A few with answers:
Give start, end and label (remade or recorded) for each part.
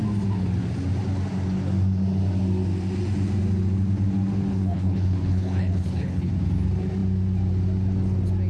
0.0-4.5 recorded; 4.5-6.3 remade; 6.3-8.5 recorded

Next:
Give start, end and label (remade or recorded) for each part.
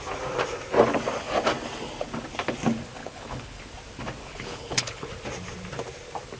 0.0-3.0 recorded; 3.0-3.6 remade; 3.6-4.2 recorded; 4.2-5.1 remade; 5.1-6.4 recorded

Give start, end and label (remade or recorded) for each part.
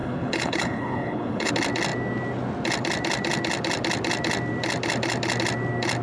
0.0-1.5 remade; 1.5-6.0 recorded